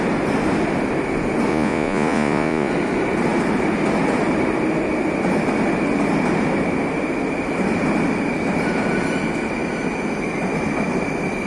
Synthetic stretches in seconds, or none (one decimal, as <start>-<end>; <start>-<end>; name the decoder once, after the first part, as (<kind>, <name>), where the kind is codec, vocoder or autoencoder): 1.5-2.7 (vocoder, Vocos)